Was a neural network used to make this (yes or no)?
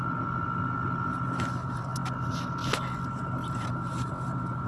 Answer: no